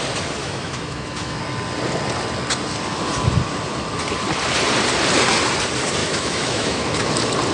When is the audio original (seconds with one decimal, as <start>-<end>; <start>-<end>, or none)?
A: 0.0-0.4; 1.4-6.0; 7.1-7.5